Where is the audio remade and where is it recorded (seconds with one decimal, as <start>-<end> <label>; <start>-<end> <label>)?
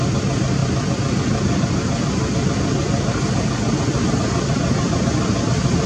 0.0-5.9 recorded